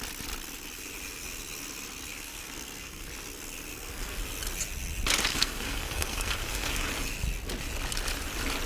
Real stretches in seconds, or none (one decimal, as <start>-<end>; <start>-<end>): 0.0-2.1; 3.1-3.7; 4.2-5.3; 6.9-8.7